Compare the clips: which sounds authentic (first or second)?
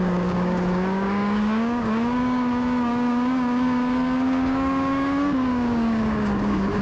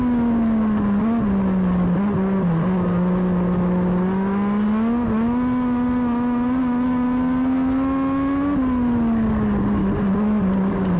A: second